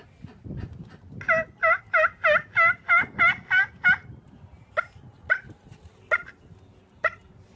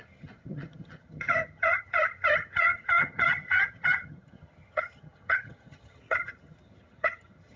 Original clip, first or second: first